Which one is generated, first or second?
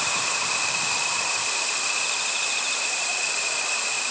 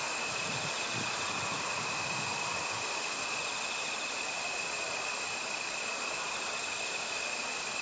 first